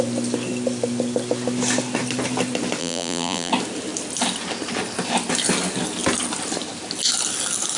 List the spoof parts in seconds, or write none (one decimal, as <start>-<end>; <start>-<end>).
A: 2.8-3.5